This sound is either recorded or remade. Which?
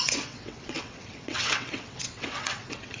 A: remade